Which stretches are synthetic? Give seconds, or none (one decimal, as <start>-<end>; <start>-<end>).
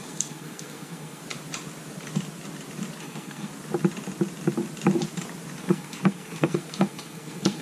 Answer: 0.0-1.2; 3.0-3.5; 5.6-7.6